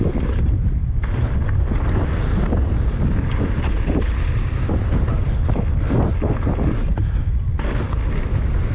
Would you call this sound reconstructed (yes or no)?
no